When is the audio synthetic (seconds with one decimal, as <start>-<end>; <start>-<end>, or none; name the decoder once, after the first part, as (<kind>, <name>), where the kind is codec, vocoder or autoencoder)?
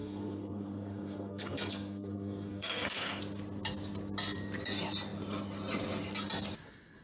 0.0-3.2 (codec, SNAC)